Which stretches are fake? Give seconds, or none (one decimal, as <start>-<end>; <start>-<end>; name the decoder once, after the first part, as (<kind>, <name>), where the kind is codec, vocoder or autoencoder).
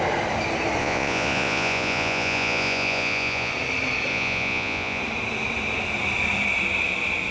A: 0.8-3.5 (vocoder, Vocos); 4.1-5.0